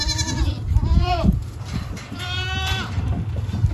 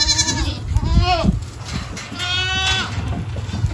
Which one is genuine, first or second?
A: second